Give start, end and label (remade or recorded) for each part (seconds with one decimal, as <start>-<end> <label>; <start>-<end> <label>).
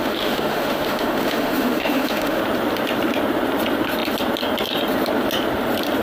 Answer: 0.0-2.4 remade; 2.4-6.0 recorded